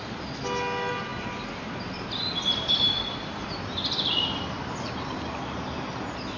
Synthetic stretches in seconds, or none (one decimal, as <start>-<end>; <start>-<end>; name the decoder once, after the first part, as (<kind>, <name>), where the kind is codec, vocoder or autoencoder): none